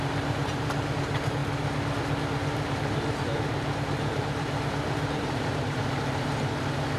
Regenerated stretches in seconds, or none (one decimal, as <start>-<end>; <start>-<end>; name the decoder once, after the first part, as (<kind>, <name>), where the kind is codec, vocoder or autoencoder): 0.0-1.4 (vocoder, BigVGAN v2); 2.0-7.0